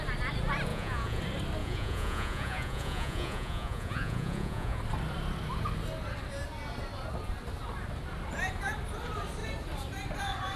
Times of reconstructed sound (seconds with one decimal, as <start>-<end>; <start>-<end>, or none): 0.7-1.2; 1.6-4.8